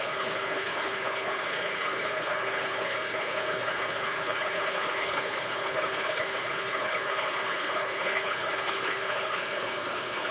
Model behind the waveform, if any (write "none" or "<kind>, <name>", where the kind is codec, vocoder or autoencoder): codec, HILCodec